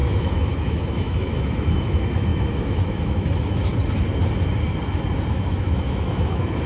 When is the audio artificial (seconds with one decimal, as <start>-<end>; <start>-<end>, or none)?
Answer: 0.0-3.7; 5.3-6.7